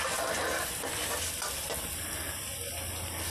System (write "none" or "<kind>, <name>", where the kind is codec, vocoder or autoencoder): none